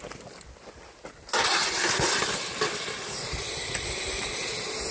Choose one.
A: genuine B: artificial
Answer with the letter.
A